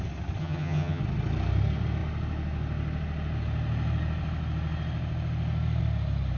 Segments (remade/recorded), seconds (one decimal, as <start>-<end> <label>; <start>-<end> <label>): 0.0-0.4 recorded; 0.4-1.0 remade; 1.0-6.4 recorded